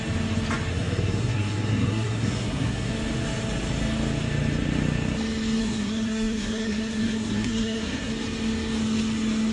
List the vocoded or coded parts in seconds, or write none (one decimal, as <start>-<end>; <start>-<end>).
0.7-2.9; 5.6-8.1